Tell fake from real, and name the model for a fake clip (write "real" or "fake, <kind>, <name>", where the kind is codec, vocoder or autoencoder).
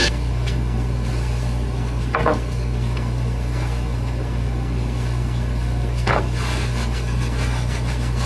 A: fake, codec, SNAC